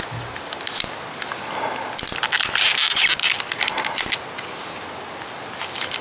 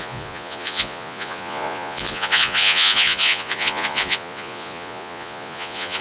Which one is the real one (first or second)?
first